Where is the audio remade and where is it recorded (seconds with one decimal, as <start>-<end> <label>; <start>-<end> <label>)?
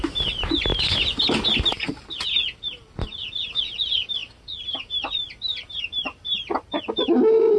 0.0-4.2 recorded; 4.2-5.8 remade; 5.8-7.6 recorded